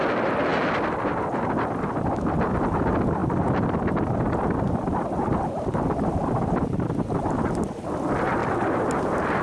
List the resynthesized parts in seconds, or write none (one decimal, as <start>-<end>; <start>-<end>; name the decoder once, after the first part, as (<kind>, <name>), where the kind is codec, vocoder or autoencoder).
3.2-7.7 (vocoder, BigVGAN v2)